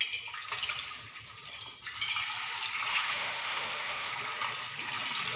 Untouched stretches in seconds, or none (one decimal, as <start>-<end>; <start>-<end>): 0.0-2.9; 4.1-5.4